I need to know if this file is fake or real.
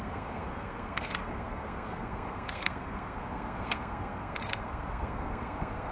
fake